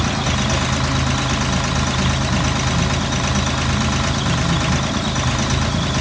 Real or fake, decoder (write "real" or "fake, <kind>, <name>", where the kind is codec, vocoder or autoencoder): real